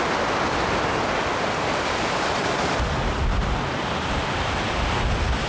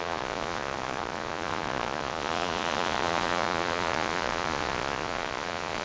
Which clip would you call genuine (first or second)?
first